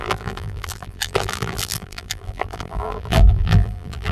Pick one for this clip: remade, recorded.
remade